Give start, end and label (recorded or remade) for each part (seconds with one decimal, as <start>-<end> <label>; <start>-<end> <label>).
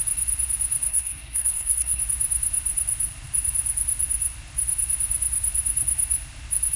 0.0-0.9 recorded; 0.9-2.0 remade; 2.0-6.8 recorded